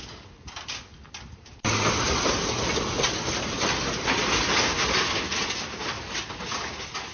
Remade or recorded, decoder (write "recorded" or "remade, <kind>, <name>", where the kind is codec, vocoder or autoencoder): recorded